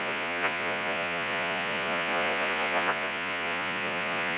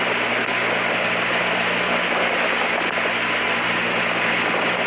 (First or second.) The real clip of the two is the second